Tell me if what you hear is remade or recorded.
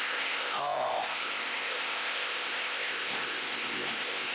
remade